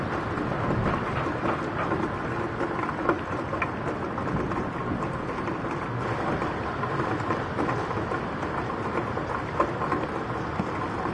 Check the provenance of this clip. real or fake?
real